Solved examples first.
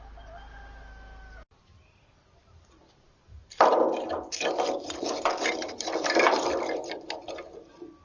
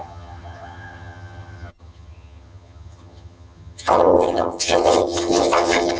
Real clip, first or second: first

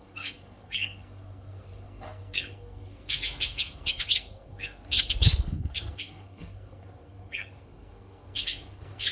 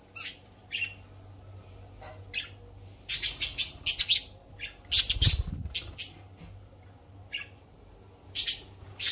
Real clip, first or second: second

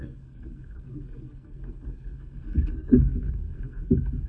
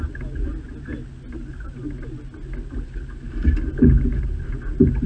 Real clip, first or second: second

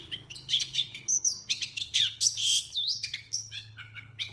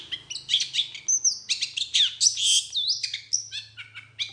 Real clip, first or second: second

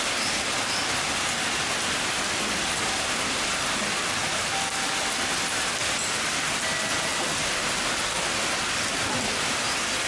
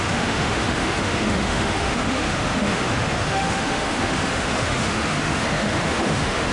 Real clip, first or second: first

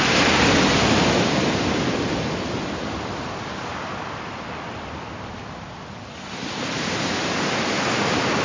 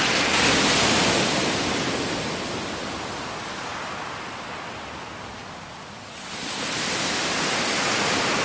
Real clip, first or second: second